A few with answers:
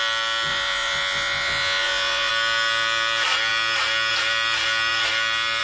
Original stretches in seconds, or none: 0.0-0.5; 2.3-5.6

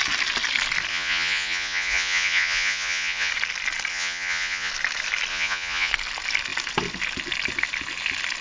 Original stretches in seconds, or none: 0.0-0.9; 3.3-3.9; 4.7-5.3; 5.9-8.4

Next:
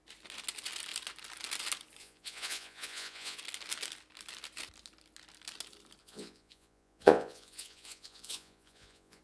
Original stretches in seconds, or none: 0.0-2.0; 3.4-6.0

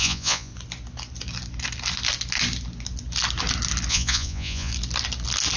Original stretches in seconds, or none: 0.5-3.9; 4.7-5.6

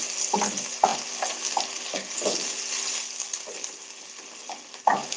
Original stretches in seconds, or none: 0.0-5.2

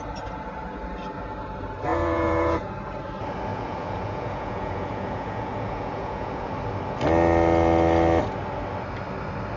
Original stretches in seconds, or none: 0.0-1.9; 2.7-3.5; 6.5-9.6

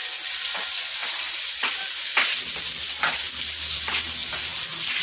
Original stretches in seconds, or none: 0.0-5.0

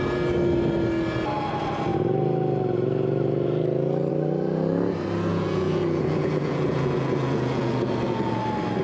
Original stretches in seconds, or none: 0.0-5.3; 8.4-8.8